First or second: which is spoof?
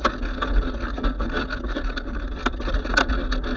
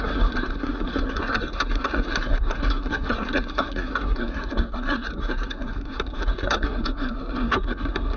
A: second